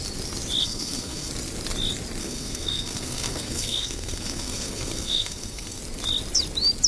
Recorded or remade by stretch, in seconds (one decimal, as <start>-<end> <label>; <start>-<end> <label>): 0.0-0.6 recorded; 0.6-1.3 remade; 1.3-2.2 recorded; 2.2-5.8 remade; 5.8-6.9 recorded

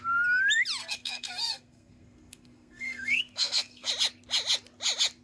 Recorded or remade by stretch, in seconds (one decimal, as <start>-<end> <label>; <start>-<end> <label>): 0.0-0.8 recorded; 0.8-3.9 remade; 3.9-5.2 recorded

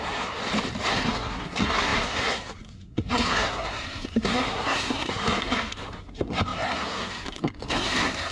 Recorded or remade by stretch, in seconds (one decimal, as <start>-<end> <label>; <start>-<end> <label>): 0.0-0.4 remade; 0.4-0.9 recorded; 0.9-8.3 remade